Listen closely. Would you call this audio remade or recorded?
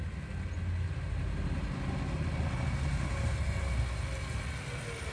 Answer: recorded